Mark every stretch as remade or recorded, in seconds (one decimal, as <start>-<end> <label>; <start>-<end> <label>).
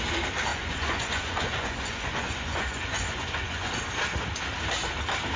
0.0-0.5 recorded; 0.5-3.7 remade; 3.7-5.4 recorded